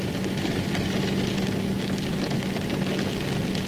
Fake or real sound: real